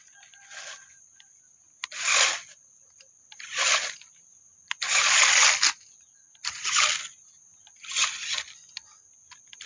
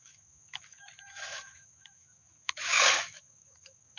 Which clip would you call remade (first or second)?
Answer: second